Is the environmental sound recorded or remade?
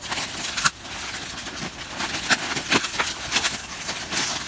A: recorded